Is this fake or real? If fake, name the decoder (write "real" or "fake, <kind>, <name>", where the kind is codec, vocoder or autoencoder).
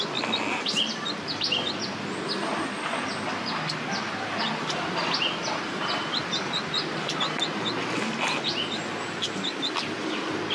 real